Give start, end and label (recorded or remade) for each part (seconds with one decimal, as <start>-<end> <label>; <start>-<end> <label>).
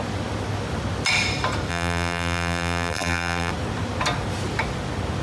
0.0-1.7 recorded; 1.7-3.5 remade; 3.5-5.2 recorded